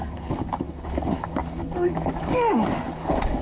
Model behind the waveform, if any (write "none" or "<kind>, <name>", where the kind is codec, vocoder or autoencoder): codec, DAC